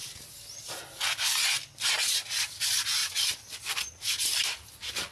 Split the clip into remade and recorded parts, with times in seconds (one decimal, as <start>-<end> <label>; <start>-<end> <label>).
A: 0.0-5.1 recorded